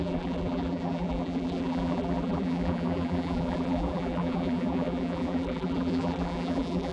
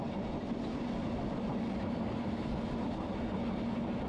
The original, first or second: second